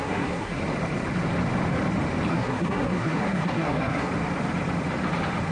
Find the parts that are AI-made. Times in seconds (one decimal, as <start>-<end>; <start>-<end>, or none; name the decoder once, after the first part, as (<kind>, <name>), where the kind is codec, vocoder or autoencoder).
0.0-0.6 (codec, SNAC); 2.3-4.1